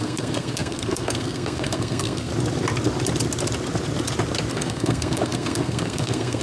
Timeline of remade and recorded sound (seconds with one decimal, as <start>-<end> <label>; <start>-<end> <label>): 0.0-2.3 remade; 2.3-4.5 recorded; 4.5-6.4 remade